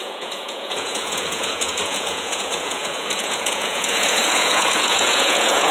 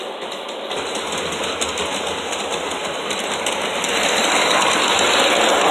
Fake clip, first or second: first